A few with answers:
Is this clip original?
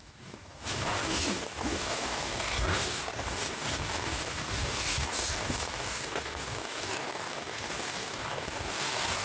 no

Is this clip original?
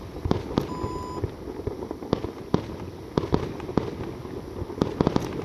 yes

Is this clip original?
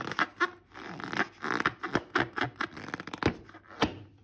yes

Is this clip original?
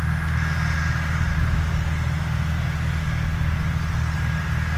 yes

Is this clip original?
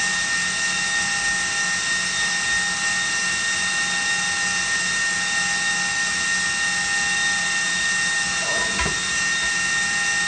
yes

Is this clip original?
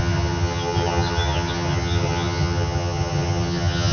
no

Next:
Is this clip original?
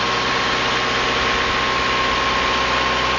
yes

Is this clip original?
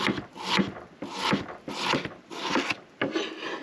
yes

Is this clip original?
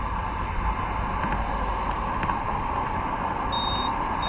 yes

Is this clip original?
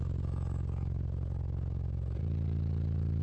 yes